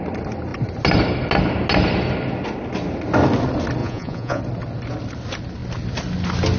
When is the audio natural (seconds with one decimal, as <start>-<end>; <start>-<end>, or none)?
0.0-3.8; 4.4-6.6